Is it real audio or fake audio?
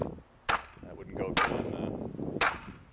real